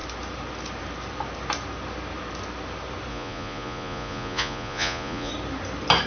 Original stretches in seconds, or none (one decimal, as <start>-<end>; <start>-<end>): 0.0-3.1; 5.3-6.1